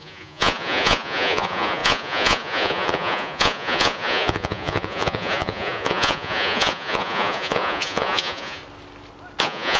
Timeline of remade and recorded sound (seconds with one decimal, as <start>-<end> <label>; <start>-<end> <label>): 0.0-8.6 remade; 8.6-9.4 recorded; 9.4-9.8 remade